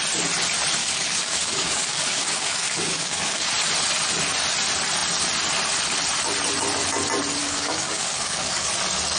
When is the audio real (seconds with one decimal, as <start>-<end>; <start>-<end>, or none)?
0.0-0.8; 3.5-7.4; 8.7-9.2